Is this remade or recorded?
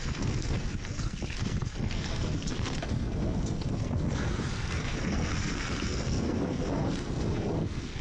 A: remade